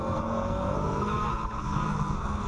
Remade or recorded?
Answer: remade